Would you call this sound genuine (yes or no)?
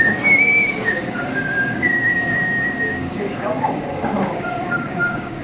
no